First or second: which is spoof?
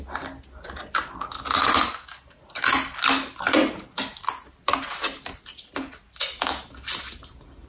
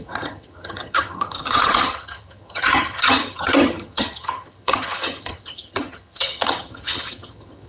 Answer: second